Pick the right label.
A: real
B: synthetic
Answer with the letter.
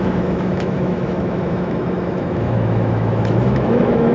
B